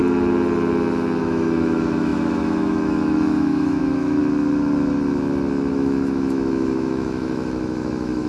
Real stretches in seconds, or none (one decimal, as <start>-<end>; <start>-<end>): 0.0-1.2; 4.2-5.7

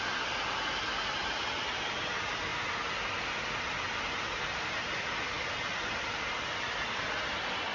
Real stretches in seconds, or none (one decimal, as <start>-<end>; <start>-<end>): 0.0-7.7

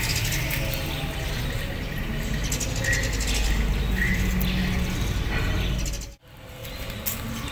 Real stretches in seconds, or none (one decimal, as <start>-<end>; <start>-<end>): 0.0-7.5

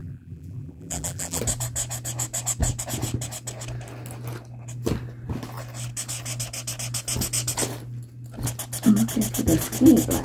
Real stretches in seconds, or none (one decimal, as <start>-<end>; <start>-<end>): 1.4-10.2

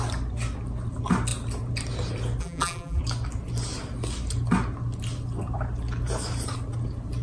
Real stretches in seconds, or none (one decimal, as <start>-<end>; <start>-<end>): 0.0-2.4; 3.0-7.2

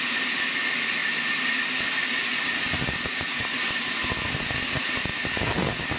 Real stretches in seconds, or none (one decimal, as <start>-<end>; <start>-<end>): 0.0-6.0

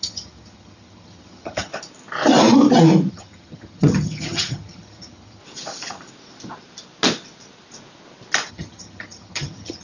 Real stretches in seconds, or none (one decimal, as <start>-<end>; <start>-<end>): 1.7-3.1; 5.4-8.5

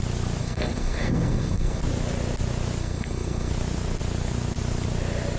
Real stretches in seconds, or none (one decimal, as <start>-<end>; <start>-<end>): 0.0-0.4; 1.8-2.8; 3.5-5.4